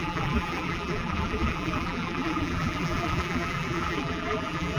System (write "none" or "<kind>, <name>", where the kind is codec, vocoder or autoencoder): vocoder, BigVGAN v2